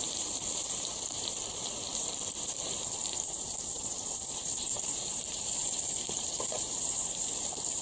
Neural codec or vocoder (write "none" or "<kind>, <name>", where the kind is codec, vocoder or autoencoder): vocoder, BigVGAN v2